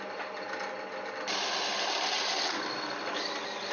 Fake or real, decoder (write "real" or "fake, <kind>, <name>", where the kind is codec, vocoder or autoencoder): real